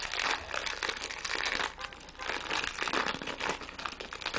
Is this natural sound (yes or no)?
yes